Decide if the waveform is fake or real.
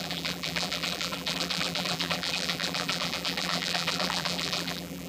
fake